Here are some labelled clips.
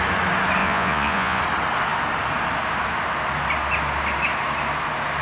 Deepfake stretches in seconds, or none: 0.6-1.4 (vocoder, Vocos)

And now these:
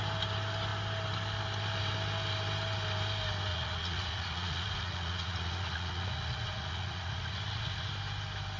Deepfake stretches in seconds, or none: 3.5-7.9 (vocoder, Vocos)

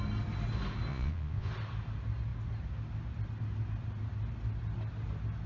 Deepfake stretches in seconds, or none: 0.9-1.5 (vocoder, Vocos)

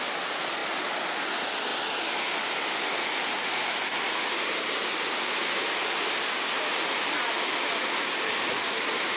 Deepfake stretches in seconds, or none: none

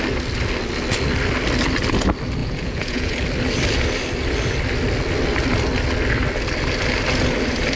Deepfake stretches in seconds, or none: 2.4-3.1 (vocoder, Vocos)